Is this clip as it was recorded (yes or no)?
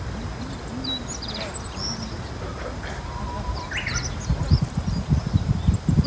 yes